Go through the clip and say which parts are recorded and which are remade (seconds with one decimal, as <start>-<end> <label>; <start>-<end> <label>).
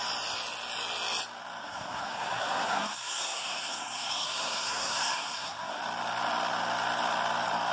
0.0-1.6 recorded; 1.6-5.8 remade; 5.8-7.7 recorded